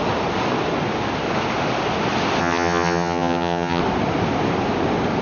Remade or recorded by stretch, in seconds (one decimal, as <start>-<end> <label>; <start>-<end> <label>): 0.0-2.4 recorded; 2.4-3.8 remade; 3.8-5.2 recorded